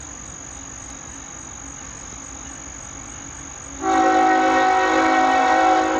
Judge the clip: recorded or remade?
recorded